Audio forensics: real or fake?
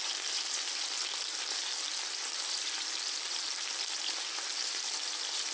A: real